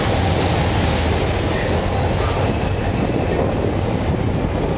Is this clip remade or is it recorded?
recorded